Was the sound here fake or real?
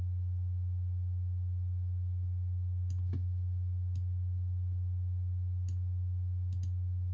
real